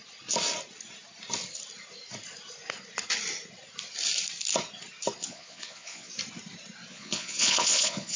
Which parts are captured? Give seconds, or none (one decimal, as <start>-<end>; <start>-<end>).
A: 0.0-5.2; 6.1-6.9